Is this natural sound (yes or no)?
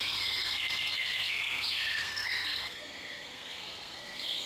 no